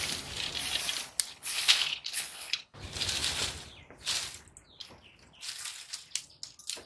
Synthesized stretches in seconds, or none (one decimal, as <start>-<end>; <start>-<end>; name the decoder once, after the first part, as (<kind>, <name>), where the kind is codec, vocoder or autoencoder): 1.3-2.8 (codec, HILCodec)